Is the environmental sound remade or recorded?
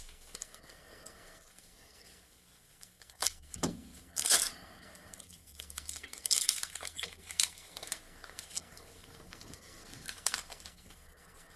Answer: remade